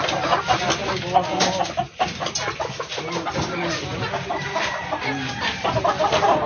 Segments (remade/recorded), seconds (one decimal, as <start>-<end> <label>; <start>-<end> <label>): 0.0-6.5 recorded